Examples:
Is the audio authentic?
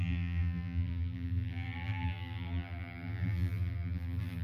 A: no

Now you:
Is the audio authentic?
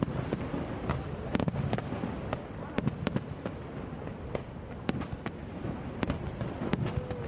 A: yes